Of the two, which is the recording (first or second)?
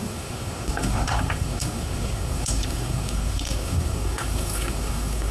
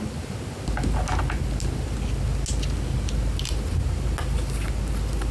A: second